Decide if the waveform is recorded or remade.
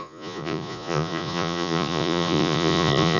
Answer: remade